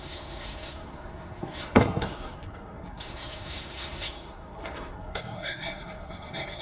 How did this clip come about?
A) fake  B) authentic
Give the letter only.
A